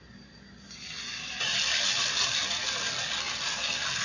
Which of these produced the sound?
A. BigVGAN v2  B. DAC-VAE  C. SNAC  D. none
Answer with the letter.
D